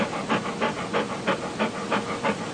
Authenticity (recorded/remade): recorded